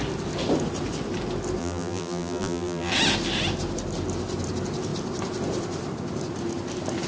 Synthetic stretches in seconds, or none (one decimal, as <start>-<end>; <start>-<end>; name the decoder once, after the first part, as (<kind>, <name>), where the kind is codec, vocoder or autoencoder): 1.6-2.9 (vocoder, BigVGAN v2)